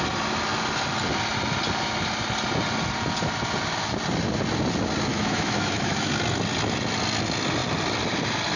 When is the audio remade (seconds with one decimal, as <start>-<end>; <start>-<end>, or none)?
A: 5.1-6.1